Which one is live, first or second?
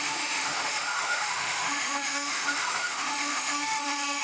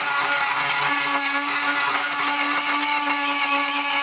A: second